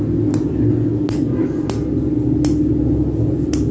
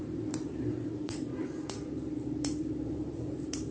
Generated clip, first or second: second